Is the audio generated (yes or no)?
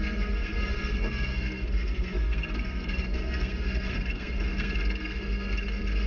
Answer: yes